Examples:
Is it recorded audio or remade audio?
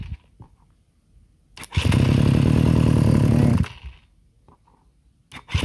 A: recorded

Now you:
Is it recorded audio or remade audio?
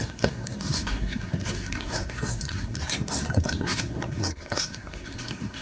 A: remade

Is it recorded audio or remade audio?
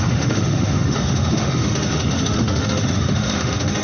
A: remade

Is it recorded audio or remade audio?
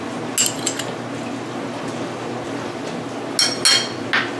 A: recorded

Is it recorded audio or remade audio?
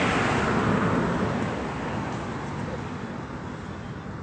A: recorded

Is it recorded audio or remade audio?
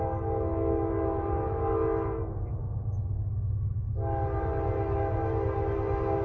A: recorded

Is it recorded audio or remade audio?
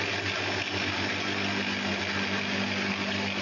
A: recorded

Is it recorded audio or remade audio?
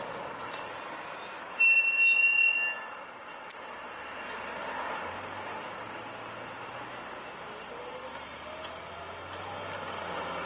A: recorded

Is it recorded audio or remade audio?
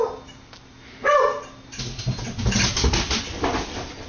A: recorded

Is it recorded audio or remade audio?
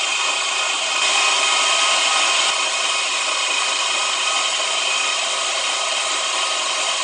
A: recorded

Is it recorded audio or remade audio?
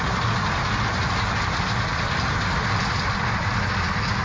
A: recorded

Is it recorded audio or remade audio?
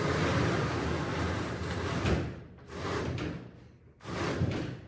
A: recorded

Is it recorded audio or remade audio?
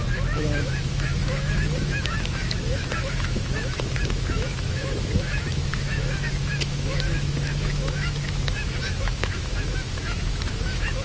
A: remade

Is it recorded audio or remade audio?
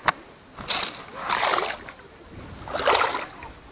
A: recorded